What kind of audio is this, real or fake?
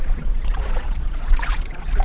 fake